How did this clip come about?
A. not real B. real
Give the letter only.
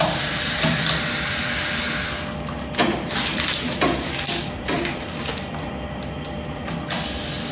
B